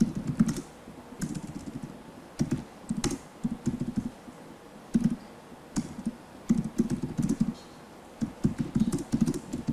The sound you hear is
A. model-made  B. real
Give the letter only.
B